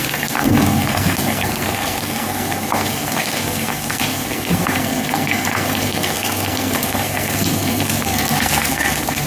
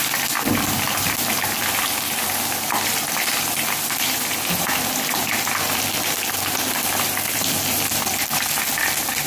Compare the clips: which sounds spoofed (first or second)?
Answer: first